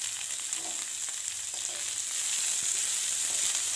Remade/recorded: recorded